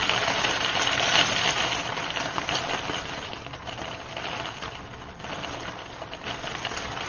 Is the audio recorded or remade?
recorded